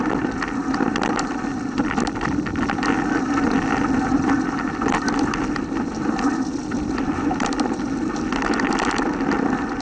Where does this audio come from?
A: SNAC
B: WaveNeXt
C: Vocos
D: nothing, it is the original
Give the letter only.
D